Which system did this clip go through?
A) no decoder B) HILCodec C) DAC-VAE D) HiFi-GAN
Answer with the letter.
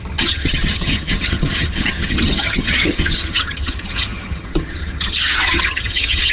D